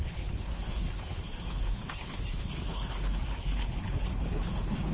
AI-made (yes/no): yes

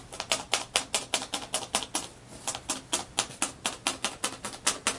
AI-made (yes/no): no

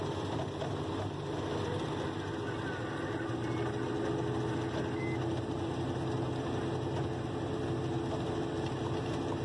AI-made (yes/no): no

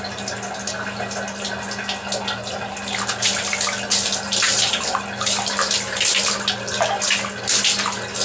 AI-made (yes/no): no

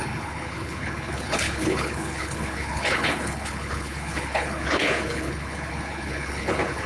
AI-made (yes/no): yes